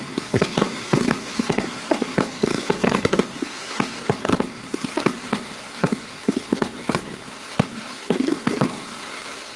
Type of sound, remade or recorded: remade